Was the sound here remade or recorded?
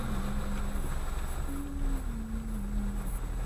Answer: recorded